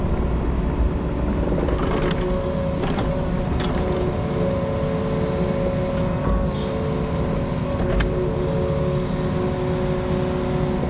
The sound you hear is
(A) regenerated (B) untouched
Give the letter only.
B